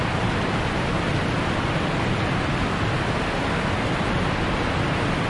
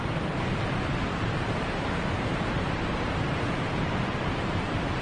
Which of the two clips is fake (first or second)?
second